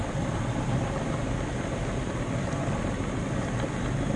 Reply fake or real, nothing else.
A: real